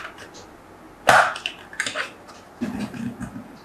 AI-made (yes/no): no